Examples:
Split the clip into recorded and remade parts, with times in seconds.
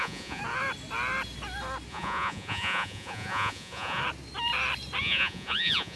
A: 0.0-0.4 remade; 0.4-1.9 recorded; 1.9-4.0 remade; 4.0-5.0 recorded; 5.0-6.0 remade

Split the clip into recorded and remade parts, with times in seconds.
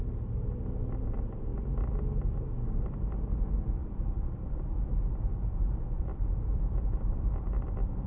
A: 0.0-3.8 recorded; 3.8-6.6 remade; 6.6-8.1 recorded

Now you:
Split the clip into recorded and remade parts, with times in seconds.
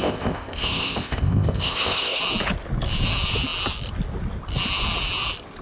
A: 0.0-2.2 remade; 2.2-5.6 recorded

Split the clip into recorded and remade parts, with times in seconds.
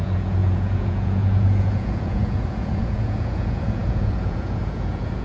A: 0.0-5.2 remade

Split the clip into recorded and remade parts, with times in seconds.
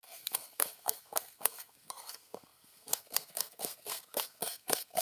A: 0.0-5.0 remade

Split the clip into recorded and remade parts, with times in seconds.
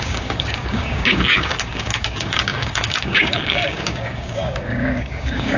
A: 0.0-5.6 remade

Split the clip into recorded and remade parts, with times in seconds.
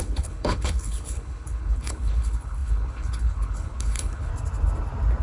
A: 0.0-4.3 remade; 4.3-5.2 recorded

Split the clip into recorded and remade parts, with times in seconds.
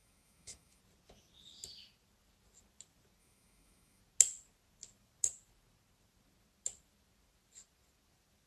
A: 0.0-0.8 remade; 0.8-3.2 recorded; 3.2-4.0 remade; 4.0-8.5 recorded